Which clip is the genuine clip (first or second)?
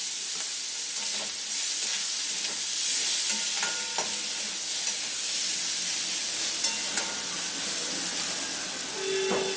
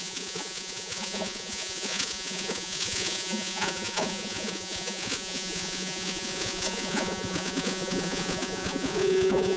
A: first